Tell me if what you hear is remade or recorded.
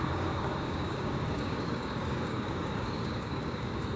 remade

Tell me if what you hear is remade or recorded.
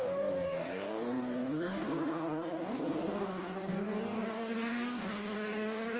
remade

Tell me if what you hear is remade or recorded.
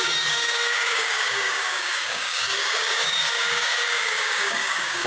remade